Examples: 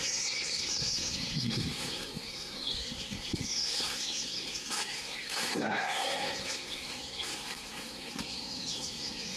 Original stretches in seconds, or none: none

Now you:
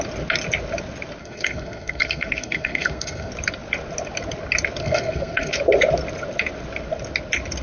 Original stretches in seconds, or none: 0.0-1.2; 3.3-4.8; 5.5-7.6

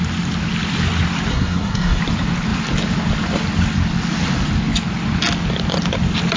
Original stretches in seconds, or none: 0.0-1.3; 2.0-6.4

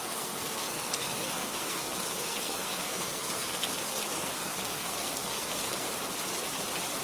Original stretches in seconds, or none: 5.9-7.0

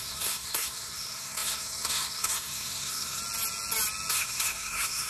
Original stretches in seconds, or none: 3.2-4.1

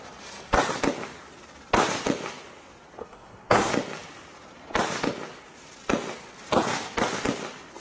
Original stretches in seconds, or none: 0.0-3.0; 3.7-7.8

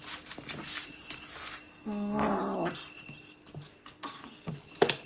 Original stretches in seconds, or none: 0.0-1.7; 2.4-3.8; 4.5-5.1

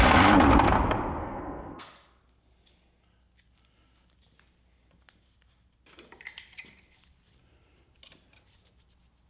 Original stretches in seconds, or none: 0.0-1.2; 2.2-9.3